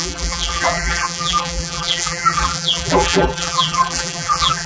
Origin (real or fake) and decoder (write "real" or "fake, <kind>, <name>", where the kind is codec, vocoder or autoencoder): fake, vocoder, BigVGAN v2